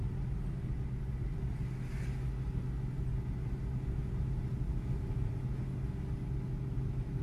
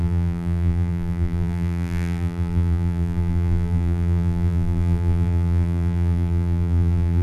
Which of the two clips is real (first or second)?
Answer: first